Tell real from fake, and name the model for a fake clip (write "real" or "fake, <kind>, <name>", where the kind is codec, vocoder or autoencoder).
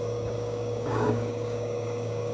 fake, codec, DAC